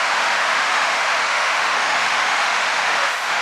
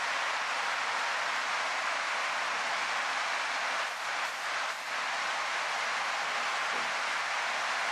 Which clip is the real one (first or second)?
second